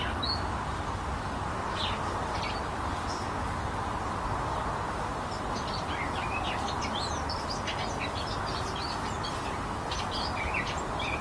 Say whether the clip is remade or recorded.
recorded